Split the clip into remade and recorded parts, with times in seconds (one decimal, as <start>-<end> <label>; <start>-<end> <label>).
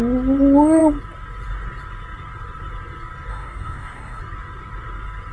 0.0-3.3 recorded; 3.3-4.2 remade; 4.2-5.3 recorded